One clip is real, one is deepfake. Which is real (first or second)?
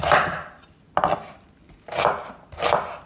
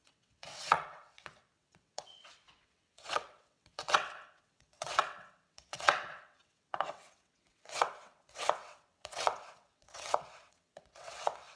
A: first